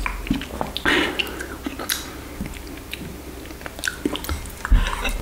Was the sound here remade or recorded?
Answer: recorded